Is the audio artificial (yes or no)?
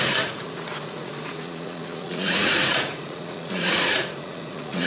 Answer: yes